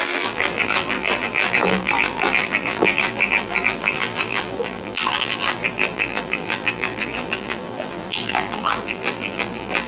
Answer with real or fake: fake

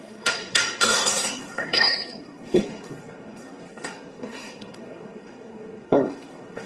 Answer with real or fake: fake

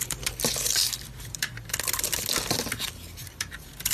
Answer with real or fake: fake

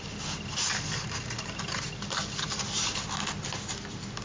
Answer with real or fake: real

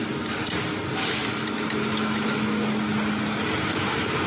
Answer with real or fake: real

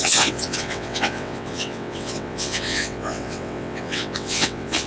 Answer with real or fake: fake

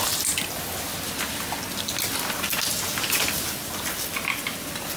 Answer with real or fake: real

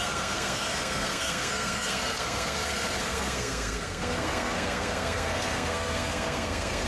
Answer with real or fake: fake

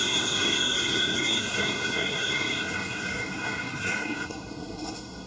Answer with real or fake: fake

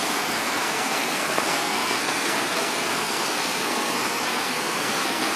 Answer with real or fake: fake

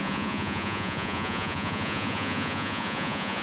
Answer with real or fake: fake